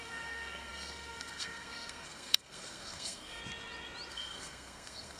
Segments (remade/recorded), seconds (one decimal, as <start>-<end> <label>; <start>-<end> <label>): 0.0-3.4 remade; 3.4-4.1 recorded; 4.1-5.2 remade